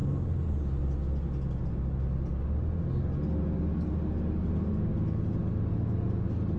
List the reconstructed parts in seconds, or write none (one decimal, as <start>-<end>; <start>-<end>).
none